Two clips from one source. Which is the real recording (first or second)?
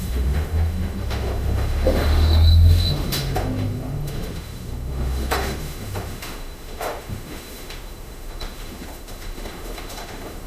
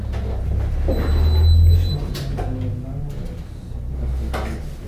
second